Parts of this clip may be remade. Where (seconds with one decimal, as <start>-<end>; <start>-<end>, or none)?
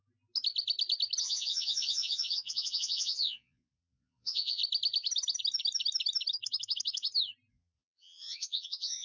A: 1.2-4.6; 7.5-9.0